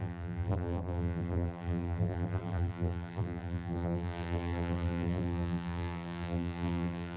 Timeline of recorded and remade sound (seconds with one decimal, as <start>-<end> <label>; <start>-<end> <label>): 0.0-7.2 remade